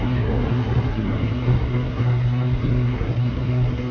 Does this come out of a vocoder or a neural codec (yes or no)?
yes